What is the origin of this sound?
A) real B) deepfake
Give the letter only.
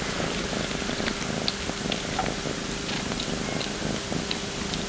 A